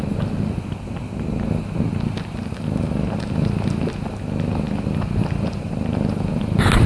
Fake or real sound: real